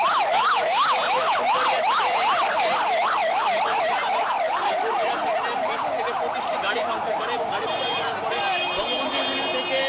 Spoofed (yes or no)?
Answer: no